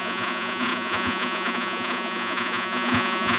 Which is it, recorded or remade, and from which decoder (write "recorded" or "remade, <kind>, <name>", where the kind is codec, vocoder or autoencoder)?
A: remade, vocoder, Vocos